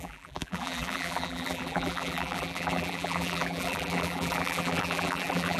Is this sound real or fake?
fake